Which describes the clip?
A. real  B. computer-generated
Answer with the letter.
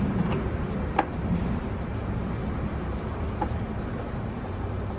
A